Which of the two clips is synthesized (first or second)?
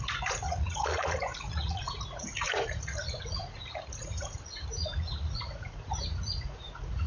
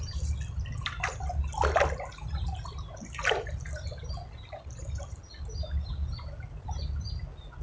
first